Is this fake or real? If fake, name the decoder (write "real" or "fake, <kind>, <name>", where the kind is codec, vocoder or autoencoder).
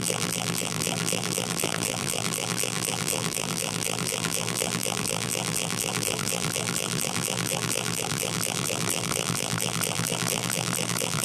fake, vocoder, BigVGAN v2